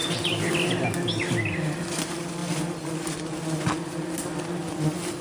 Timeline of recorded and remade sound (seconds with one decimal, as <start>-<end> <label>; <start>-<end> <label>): 0.0-1.3 recorded; 1.3-5.2 remade